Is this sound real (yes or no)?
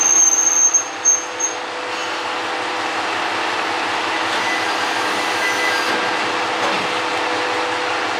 yes